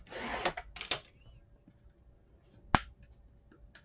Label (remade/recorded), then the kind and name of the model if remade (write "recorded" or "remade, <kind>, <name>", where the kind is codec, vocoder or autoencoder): recorded